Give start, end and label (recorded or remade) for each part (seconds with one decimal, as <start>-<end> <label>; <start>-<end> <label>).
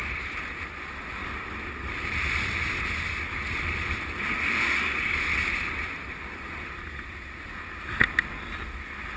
0.0-1.2 recorded; 1.2-2.4 remade; 2.4-5.3 recorded; 5.3-8.0 remade; 8.0-9.2 recorded